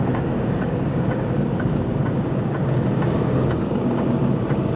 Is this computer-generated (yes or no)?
yes